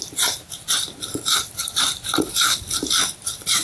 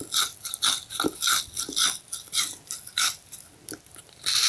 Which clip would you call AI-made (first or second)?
first